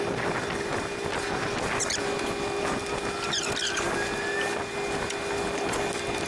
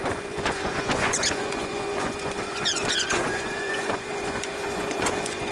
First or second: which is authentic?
first